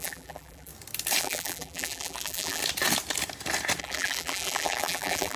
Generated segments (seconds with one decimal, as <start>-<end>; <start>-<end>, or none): 0.0-0.7; 1.2-2.6; 3.8-5.4